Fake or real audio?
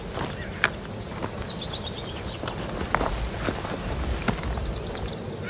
real